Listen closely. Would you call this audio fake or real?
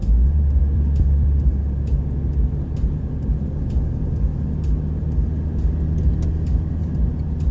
real